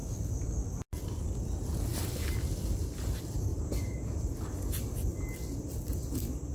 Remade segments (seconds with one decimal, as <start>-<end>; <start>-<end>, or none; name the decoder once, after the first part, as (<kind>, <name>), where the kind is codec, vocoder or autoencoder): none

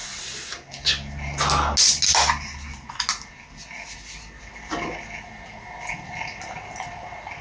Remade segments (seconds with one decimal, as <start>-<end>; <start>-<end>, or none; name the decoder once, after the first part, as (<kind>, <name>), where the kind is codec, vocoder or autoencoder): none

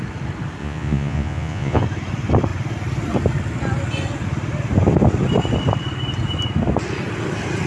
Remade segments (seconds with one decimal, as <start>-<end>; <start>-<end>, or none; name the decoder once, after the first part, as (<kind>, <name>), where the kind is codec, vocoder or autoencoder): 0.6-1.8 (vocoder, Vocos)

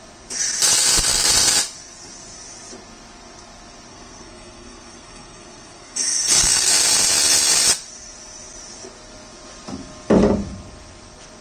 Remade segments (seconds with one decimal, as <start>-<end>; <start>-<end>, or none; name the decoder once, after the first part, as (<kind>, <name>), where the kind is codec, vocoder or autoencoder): 3.9-6.7 (codec, SNAC)